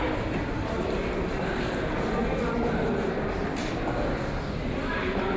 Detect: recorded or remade recorded